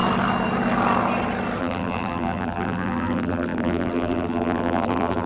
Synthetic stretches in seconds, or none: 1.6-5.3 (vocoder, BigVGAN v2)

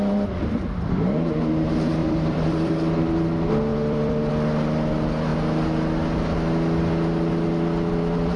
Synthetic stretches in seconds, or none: 2.0-3.0 (vocoder, BigVGAN v2); 3.7-4.3